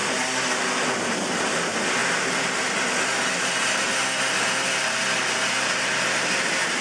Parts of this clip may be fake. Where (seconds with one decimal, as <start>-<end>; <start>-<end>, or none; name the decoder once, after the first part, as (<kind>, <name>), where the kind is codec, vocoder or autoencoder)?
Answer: none